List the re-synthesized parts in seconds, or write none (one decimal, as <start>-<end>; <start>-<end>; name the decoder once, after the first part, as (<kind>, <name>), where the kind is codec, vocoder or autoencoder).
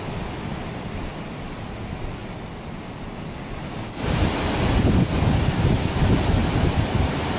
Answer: 6.4-7.4 (vocoder, BigVGAN v2)